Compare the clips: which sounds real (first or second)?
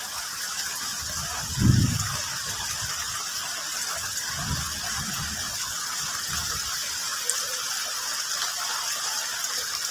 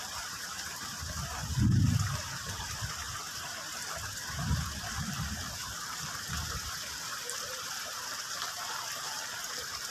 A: first